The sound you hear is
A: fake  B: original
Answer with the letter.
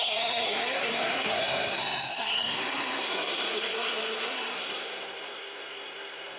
A